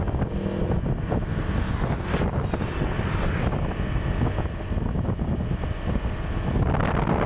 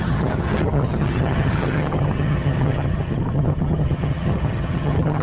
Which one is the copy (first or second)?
second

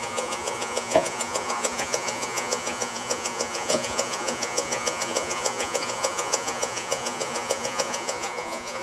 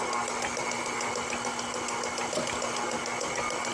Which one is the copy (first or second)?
first